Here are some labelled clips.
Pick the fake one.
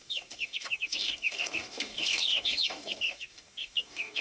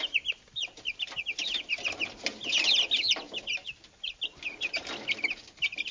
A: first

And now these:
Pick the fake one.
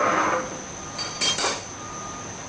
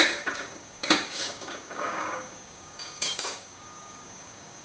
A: second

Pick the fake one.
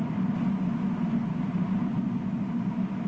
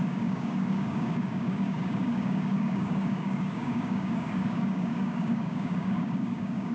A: second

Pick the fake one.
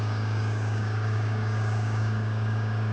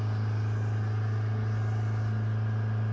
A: first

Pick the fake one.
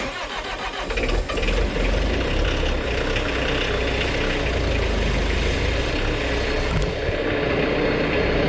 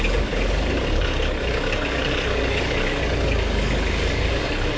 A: second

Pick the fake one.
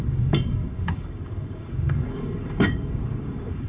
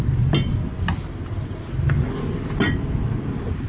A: first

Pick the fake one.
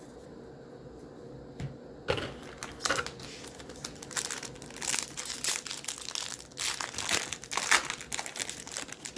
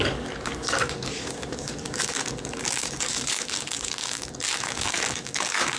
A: second